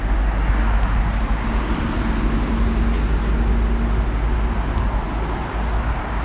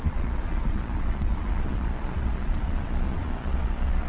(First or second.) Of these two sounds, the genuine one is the first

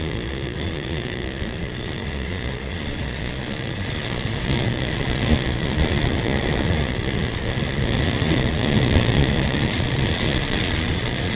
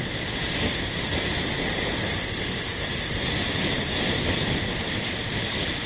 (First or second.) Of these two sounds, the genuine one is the second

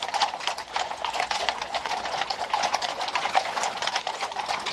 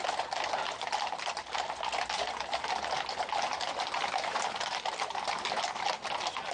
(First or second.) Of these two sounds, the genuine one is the second